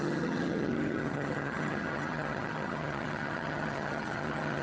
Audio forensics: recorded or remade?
remade